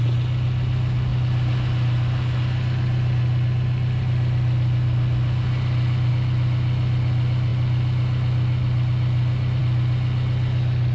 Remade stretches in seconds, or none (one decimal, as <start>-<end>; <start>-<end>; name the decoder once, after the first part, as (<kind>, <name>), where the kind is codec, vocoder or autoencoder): none